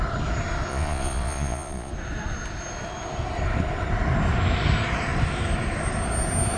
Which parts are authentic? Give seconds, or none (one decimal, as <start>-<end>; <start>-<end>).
0.0-0.7; 1.9-6.6